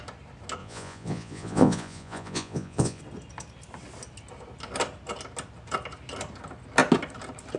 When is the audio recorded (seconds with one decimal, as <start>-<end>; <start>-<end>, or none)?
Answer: 0.0-0.6; 3.0-7.6